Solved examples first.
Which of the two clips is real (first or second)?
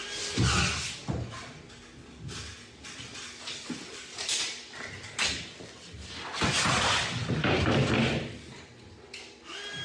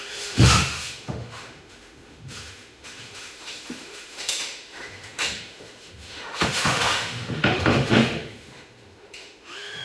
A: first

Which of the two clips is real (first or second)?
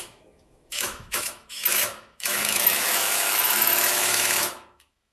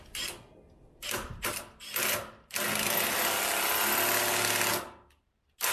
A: second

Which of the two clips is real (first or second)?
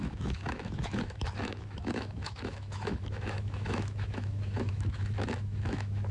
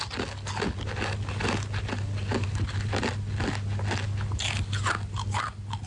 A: second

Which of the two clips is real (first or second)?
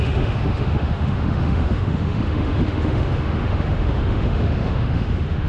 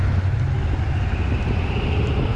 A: second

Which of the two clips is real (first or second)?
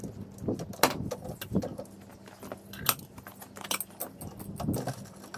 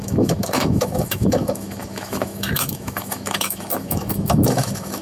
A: first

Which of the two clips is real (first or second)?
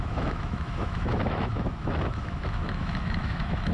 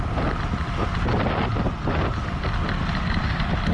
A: second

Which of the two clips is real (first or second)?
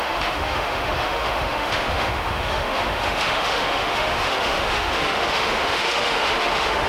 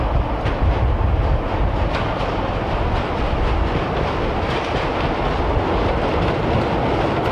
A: second